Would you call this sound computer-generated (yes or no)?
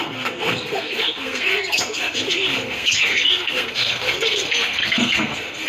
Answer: yes